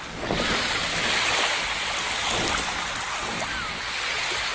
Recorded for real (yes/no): yes